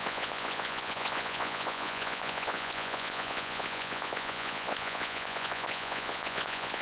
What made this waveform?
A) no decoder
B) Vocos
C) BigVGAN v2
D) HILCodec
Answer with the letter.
B